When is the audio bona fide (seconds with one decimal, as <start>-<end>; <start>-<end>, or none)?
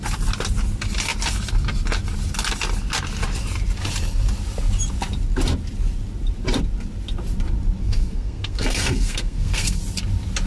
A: 0.0-7.8; 9.8-10.5